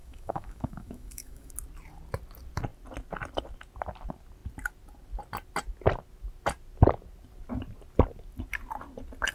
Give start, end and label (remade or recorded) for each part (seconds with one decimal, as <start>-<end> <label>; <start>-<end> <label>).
0.0-1.5 remade; 1.5-9.3 recorded